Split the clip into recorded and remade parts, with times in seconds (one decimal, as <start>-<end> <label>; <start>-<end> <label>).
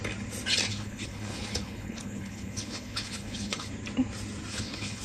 0.0-0.7 recorded; 0.7-3.7 remade; 3.7-4.5 recorded; 4.5-5.0 remade